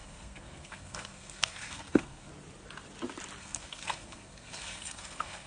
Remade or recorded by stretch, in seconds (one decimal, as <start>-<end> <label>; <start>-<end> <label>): 0.0-2.3 remade; 2.3-3.4 recorded; 3.4-5.5 remade